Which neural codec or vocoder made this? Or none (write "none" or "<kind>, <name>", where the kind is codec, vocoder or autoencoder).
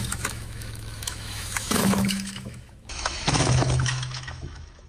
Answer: autoencoder, DAC-VAE